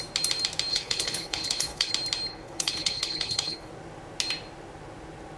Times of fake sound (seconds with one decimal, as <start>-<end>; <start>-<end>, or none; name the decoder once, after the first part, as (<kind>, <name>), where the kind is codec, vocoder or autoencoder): 0.7-1.9 (codec, HILCodec); 2.3-3.7